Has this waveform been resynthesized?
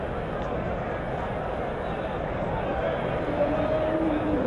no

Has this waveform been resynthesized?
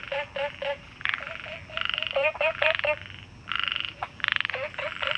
yes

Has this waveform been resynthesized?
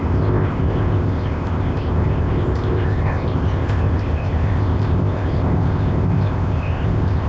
yes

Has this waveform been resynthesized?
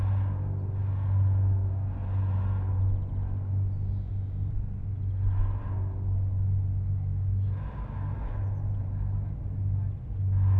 no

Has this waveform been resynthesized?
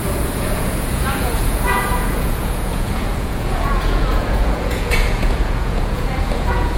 yes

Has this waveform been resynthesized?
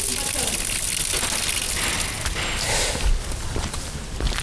no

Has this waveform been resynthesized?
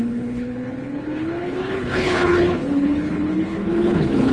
yes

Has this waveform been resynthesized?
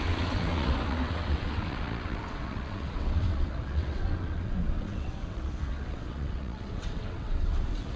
yes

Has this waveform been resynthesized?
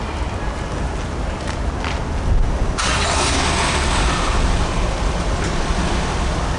no